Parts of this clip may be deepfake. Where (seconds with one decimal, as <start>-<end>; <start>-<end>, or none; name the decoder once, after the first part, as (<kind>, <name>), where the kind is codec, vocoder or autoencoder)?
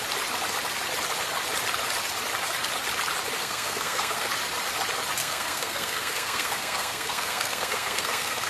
3.4-4.3 (codec, SNAC); 5.2-8.5